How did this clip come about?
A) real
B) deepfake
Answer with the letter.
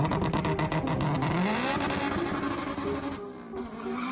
A